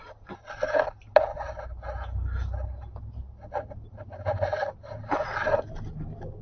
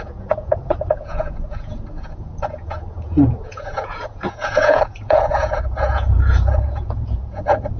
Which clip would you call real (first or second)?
first